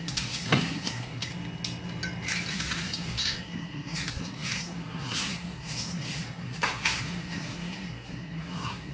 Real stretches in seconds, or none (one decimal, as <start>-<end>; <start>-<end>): 1.3-2.5